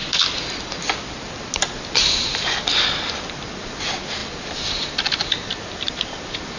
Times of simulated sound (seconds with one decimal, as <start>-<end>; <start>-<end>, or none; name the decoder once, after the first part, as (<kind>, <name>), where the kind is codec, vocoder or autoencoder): none